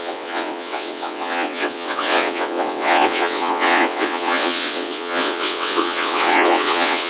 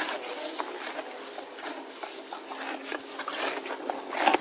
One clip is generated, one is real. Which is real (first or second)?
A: second